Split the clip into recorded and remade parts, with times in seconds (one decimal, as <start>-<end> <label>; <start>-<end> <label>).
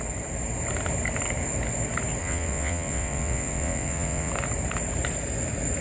0.0-2.2 recorded; 2.2-4.3 remade; 4.3-5.8 recorded